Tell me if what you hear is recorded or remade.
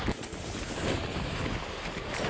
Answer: recorded